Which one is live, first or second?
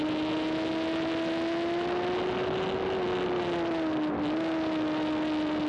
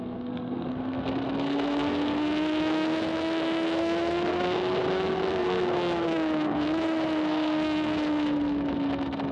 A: first